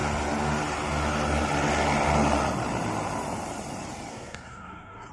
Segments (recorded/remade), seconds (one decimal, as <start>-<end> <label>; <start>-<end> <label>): 0.0-4.1 recorded; 4.1-5.1 remade